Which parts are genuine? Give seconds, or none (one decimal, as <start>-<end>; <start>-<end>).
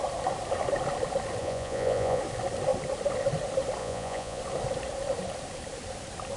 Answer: 0.0-1.4; 2.2-3.8; 4.4-6.4